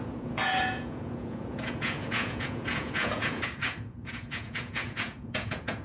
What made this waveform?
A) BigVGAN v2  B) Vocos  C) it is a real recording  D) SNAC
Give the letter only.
B